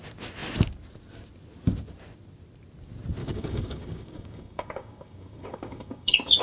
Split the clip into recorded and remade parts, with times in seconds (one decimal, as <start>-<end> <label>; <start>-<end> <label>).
0.0-3.2 recorded; 3.2-6.4 remade